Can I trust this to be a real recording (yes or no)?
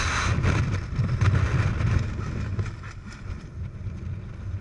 yes